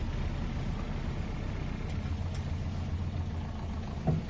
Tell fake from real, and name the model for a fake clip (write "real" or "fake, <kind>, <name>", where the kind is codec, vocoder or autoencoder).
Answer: real